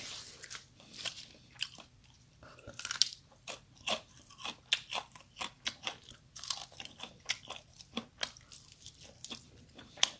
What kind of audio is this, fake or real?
fake